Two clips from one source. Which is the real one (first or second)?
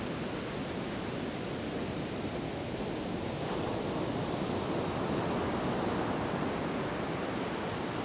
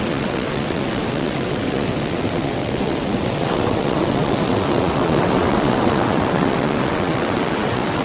first